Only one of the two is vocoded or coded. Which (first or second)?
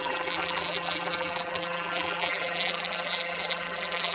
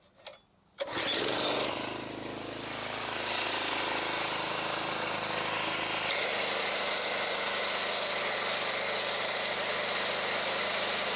first